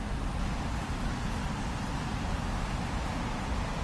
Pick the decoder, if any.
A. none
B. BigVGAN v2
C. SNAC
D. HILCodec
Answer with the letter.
A